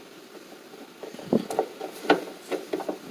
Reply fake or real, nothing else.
real